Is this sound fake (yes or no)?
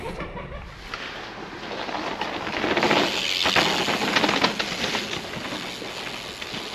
no